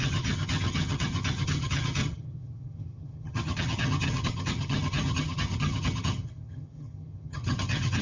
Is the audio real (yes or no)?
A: no